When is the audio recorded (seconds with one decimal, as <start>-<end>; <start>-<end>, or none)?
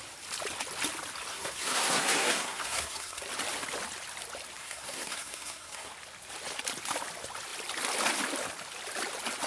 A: 0.0-1.3; 3.2-4.6; 5.9-9.5